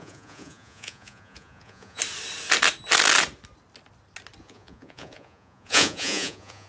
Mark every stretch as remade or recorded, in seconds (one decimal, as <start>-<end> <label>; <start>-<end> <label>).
0.0-2.0 remade; 2.0-4.4 recorded; 4.4-6.7 remade